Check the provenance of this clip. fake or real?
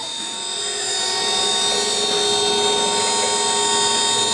real